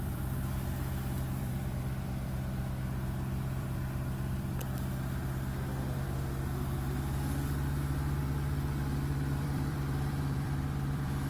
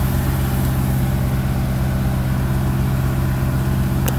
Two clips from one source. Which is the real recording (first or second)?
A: second